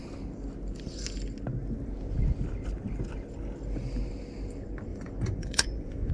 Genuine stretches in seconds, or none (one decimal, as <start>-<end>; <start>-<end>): 0.0-4.9